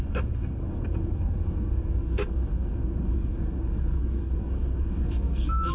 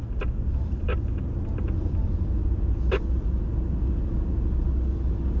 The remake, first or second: first